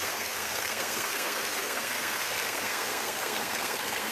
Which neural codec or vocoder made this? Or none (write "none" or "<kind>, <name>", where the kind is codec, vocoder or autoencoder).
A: codec, SNAC